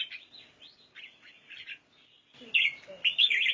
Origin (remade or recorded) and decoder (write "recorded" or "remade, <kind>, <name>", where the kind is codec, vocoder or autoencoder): recorded